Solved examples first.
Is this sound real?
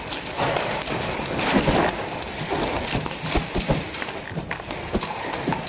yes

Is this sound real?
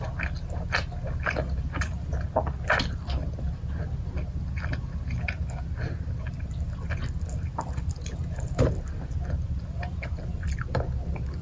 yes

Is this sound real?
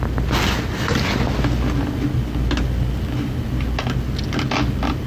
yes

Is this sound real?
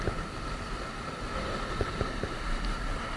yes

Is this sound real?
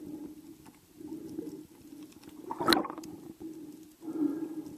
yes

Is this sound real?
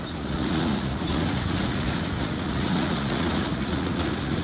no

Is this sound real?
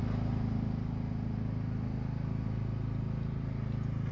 yes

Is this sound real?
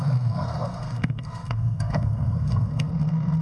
no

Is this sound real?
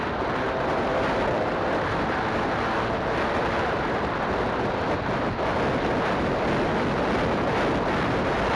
yes